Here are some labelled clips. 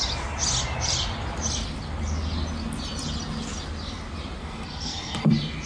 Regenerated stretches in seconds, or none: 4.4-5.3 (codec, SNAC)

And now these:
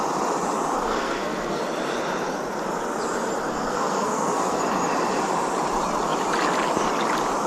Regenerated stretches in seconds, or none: 0.8-1.6 (codec, SNAC); 3.5-4.6

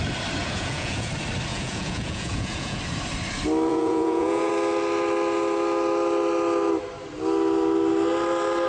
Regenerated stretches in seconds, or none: 0.4-1.1 (vocoder, Vocos); 1.5-2.8; 3.7-4.5

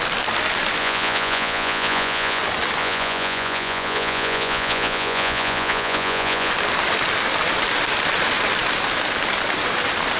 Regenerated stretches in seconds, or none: 0.8-2.4 (vocoder, Vocos); 2.8-6.5

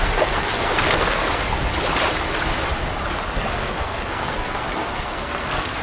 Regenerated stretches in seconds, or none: 0.0-1.4 (codec, SNAC); 3.5-5.8

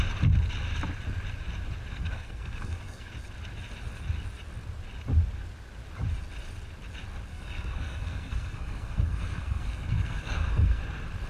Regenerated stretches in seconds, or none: 1.9-3.1 (codec, SNAC); 7.3-10.8

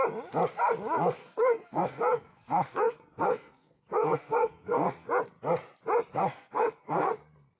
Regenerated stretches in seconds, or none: 1.2-5.1 (codec, SNAC); 6.1-7.1